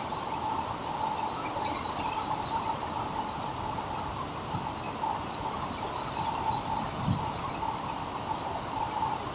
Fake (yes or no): no